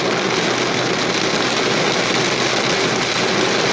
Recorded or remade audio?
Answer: recorded